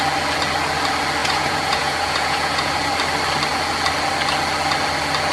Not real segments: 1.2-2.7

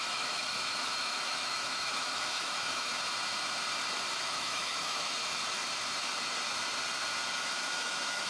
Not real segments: 0.0-2.9; 4.2-5.6; 7.3-8.3

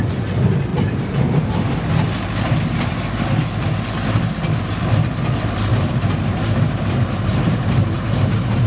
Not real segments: 0.7-1.8; 5.7-8.7